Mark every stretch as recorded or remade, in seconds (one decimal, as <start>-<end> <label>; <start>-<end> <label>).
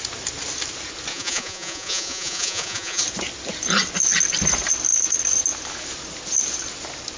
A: 0.0-1.1 recorded; 1.1-3.0 remade; 3.0-7.2 recorded